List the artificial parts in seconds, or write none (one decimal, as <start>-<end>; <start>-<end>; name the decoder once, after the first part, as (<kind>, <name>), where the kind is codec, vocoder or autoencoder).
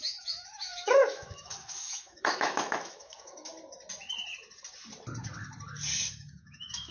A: 0.0-3.5 (autoencoder, DAC-VAE); 6.1-6.9